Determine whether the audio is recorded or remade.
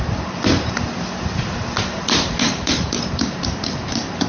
remade